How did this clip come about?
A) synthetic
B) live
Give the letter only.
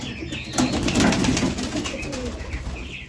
B